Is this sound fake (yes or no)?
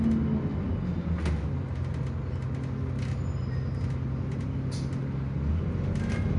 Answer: no